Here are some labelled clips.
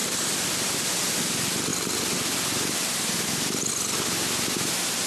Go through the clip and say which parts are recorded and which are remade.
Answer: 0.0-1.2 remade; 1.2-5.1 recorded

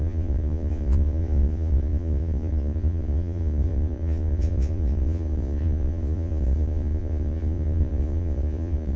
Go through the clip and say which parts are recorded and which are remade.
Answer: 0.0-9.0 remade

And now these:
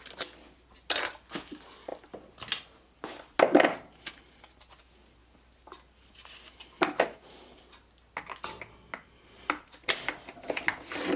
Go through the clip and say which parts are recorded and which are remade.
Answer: 0.0-11.2 recorded

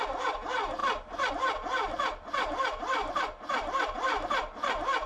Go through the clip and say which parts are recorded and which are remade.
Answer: 0.0-5.1 recorded

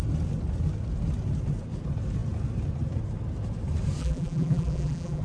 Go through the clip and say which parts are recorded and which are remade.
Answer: 0.0-4.0 recorded; 4.0-5.2 remade

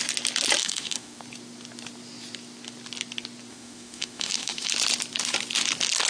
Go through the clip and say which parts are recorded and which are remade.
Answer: 0.0-0.6 recorded; 0.6-1.2 remade; 1.2-3.5 recorded; 3.5-4.7 remade; 4.7-6.1 recorded